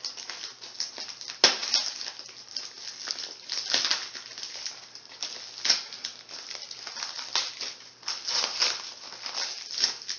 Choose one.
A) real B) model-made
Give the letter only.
A